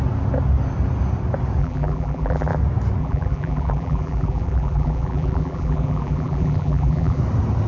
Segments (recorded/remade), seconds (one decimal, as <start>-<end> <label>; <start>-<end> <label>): 0.0-1.6 recorded; 1.6-2.6 remade; 2.6-3.0 recorded; 3.0-7.2 remade; 7.2-7.7 recorded